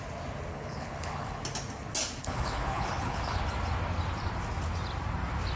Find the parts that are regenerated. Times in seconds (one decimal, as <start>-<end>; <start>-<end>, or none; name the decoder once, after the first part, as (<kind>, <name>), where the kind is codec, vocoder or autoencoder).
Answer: 0.5-1.4 (codec, HILCodec); 2.2-3.4